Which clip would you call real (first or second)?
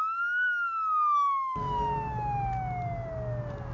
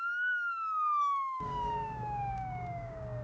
first